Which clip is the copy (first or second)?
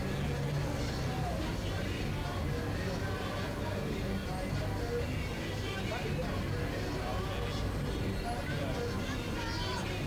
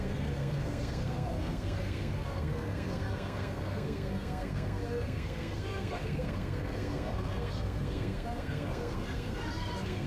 second